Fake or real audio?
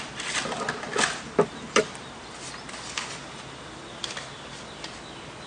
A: real